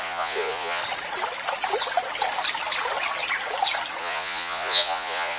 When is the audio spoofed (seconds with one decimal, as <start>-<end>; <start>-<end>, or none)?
0.0-0.8; 4.0-5.4